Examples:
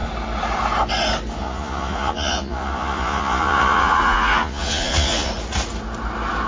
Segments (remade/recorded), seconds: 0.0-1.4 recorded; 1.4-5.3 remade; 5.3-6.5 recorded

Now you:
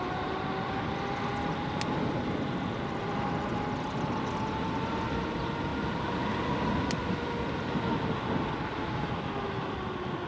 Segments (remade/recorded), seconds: 0.0-10.3 recorded

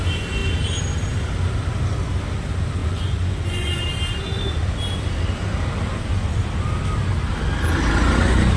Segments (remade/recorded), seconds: 0.0-2.8 recorded; 2.8-3.8 remade; 3.8-8.6 recorded

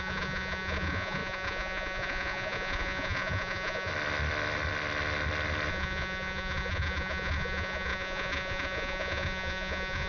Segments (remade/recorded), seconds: 0.0-3.9 remade; 3.9-5.7 recorded; 5.7-10.1 remade